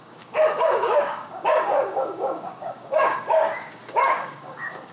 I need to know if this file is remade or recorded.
remade